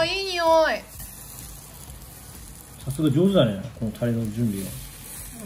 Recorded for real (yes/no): yes